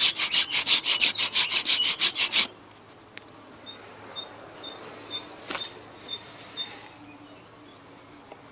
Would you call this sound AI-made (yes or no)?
no